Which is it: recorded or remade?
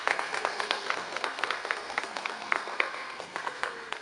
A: remade